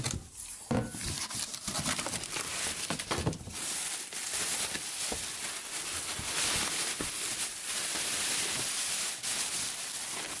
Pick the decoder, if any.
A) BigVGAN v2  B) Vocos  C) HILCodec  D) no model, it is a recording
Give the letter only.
D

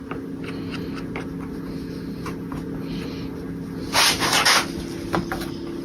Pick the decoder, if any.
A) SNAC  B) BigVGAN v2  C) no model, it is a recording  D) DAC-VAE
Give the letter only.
C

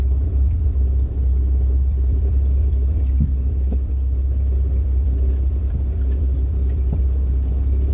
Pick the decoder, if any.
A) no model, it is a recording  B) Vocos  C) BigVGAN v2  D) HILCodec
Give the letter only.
C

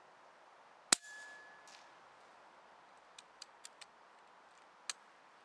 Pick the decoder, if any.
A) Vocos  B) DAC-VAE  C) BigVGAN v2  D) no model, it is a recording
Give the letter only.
D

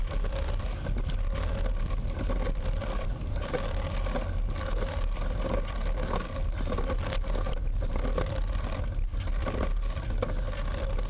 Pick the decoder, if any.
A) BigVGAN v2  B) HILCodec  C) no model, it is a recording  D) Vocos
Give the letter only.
C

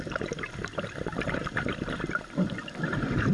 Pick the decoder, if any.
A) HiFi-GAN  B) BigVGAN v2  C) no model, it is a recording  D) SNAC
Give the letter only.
B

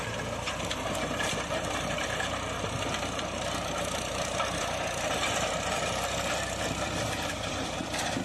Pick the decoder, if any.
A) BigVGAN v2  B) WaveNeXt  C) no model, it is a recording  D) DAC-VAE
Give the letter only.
A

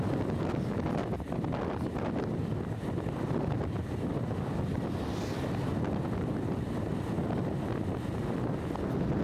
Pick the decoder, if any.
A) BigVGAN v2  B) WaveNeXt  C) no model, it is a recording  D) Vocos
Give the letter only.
C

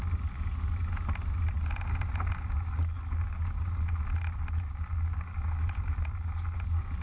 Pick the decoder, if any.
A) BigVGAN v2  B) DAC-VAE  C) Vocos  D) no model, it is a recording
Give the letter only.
D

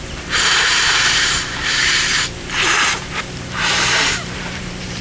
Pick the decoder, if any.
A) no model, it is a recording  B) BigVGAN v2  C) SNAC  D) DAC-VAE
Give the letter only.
B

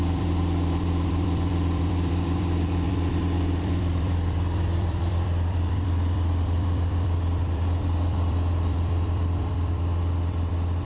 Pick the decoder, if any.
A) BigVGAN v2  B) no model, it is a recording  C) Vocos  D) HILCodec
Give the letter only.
A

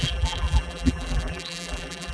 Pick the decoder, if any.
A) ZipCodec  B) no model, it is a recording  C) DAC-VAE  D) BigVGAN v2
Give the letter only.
D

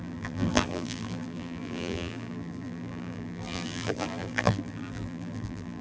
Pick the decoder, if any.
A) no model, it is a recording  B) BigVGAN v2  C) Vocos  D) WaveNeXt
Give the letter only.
B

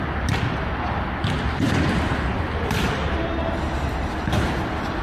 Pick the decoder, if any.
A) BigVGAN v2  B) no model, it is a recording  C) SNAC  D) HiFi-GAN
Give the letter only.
B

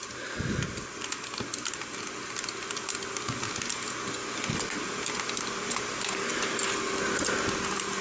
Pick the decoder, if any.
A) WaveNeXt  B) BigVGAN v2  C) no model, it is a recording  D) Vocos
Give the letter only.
C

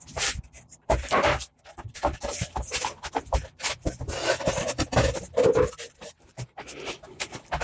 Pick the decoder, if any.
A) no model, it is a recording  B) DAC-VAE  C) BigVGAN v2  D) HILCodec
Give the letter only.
C